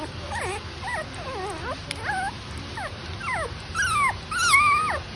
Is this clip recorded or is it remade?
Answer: recorded